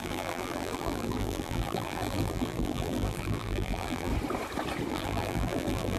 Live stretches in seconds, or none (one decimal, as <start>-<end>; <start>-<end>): 4.1-4.9